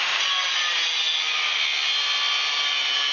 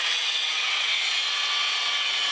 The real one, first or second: first